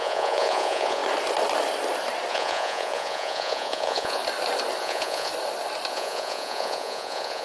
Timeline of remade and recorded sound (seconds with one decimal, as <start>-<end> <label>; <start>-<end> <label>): 0.0-1.0 remade; 1.0-2.3 recorded; 2.3-4.2 remade; 4.2-4.8 recorded; 4.8-5.3 remade; 5.3-5.9 recorded; 5.9-7.4 remade